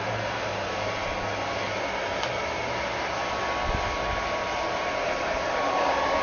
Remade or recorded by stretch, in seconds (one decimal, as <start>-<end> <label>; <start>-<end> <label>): 0.0-1.0 remade; 1.0-4.7 recorded; 4.7-6.2 remade